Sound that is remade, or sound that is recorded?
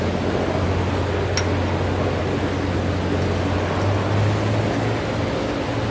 recorded